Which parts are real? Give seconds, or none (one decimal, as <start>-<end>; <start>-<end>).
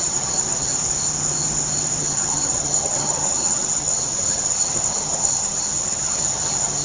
0.7-2.0